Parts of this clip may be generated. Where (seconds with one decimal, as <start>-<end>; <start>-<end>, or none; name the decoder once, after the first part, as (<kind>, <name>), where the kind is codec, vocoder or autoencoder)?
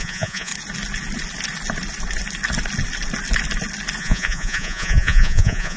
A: 0.0-0.5 (vocoder, Vocos); 4.0-5.8